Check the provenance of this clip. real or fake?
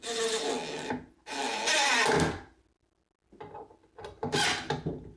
real